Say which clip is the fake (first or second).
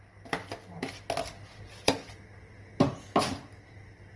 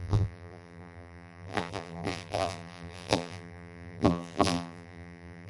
second